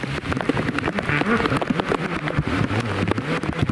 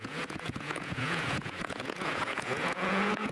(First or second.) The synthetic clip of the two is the second